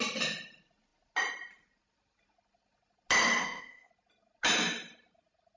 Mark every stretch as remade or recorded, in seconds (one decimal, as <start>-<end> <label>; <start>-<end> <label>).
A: 0.0-3.4 recorded; 3.4-3.9 remade; 3.9-5.6 recorded